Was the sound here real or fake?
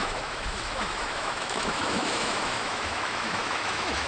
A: fake